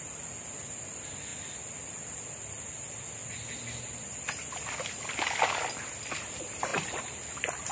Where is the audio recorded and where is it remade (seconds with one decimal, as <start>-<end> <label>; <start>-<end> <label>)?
0.0-7.7 recorded